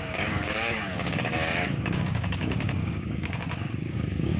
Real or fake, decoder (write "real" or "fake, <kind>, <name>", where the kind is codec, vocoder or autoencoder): fake, codec, DAC